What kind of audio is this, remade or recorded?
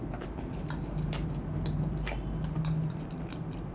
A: recorded